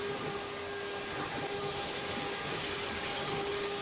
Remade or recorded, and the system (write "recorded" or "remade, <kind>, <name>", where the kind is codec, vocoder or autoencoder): recorded